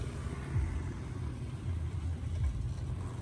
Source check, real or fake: real